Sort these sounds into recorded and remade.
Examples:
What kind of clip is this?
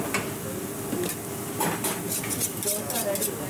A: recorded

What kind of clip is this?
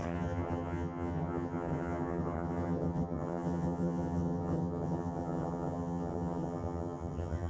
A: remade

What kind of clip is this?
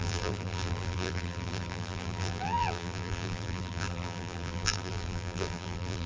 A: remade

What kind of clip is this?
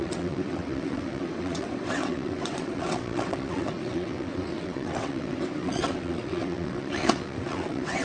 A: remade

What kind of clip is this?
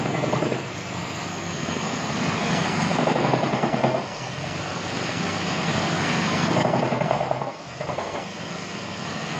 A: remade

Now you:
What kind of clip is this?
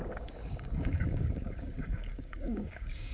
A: remade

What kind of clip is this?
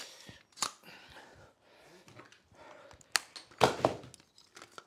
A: recorded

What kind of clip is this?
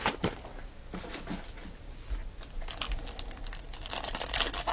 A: recorded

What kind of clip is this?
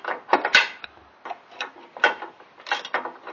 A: recorded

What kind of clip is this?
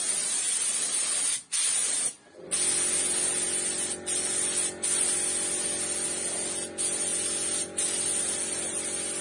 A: recorded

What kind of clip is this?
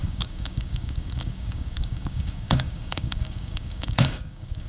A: remade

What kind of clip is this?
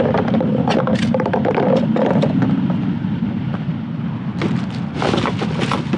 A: recorded